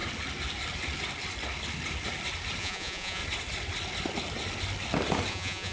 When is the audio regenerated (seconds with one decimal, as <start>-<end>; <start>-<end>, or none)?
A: 2.6-3.2; 5.3-5.7